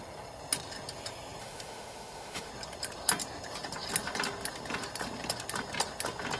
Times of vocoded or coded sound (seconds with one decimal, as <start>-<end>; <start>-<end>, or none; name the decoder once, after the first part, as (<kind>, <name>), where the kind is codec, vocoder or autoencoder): 1.4-2.5 (autoencoder, DAC-VAE)